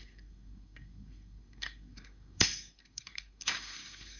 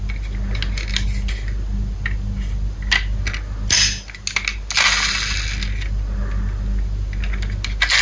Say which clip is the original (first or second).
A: second